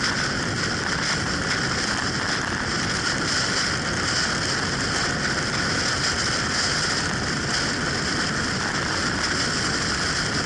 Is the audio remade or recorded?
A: recorded